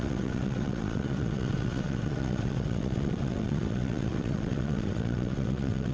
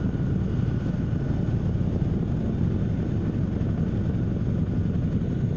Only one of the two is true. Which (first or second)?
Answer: second